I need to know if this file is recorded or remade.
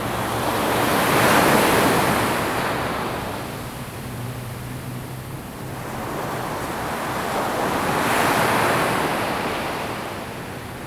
recorded